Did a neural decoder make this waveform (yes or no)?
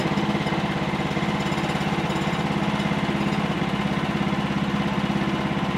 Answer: no